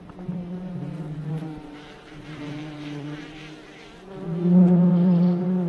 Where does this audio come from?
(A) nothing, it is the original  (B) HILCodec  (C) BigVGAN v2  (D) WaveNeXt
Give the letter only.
C